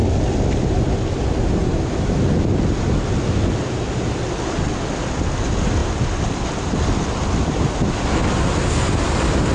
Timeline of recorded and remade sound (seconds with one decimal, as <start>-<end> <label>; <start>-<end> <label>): 0.0-9.5 recorded